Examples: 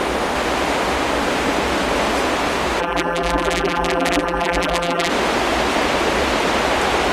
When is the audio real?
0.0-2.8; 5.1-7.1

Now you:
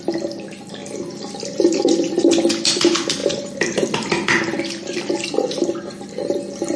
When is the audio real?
0.0-0.8; 2.3-3.2; 5.1-6.8

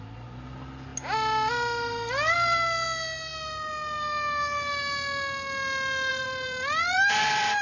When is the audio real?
0.0-6.1

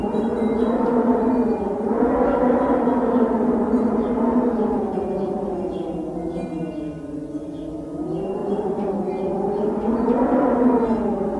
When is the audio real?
5.1-8.4; 9.5-11.4

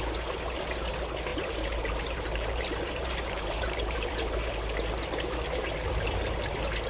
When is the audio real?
0.0-1.3; 4.5-6.9

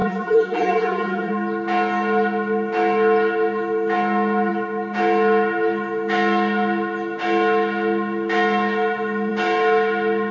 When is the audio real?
1.3-10.3